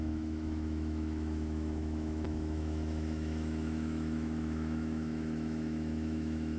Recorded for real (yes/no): no